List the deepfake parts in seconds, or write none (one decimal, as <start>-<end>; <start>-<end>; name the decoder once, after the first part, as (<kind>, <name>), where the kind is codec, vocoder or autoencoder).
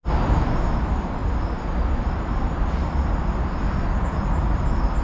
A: none